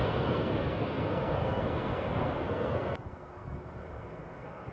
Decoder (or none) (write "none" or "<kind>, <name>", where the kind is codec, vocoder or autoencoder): codec, SNAC